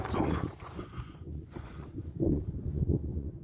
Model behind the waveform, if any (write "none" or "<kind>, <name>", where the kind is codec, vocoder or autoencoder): vocoder, Vocos